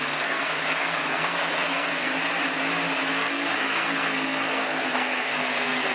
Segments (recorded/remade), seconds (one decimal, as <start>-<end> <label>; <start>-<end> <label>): 0.0-2.1 remade; 2.1-3.3 recorded; 3.3-5.9 remade